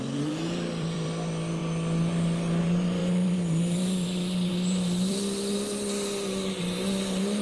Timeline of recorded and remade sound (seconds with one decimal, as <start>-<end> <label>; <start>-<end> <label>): 0.0-1.6 remade; 1.6-2.6 recorded; 2.6-7.4 remade